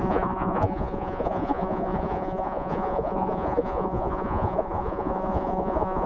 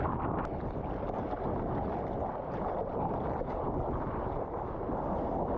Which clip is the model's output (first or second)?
first